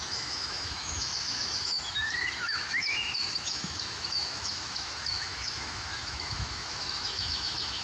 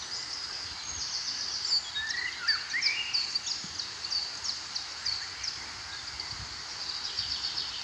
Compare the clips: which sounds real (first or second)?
second